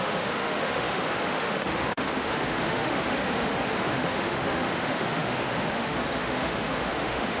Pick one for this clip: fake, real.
fake